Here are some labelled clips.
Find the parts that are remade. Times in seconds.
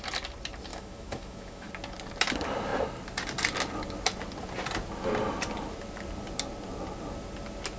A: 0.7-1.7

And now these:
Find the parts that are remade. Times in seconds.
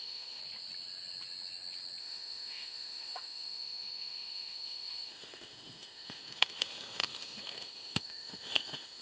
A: 0.0-0.4; 2.0-9.0